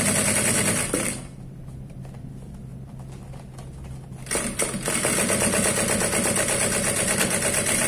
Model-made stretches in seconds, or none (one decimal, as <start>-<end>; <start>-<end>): none